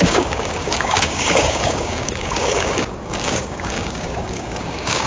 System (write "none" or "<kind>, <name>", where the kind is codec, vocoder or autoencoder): codec, DAC